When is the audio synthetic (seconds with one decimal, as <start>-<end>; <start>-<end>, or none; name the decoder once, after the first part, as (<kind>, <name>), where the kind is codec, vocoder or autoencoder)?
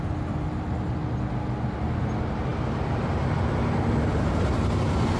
none